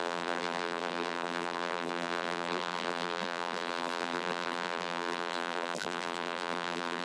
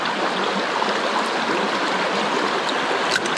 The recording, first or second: second